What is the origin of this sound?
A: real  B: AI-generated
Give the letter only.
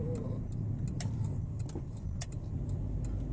A